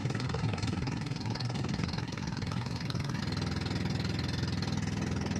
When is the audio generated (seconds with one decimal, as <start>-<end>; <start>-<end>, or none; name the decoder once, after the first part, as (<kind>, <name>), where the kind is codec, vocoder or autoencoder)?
0.0-3.2 (codec, SNAC)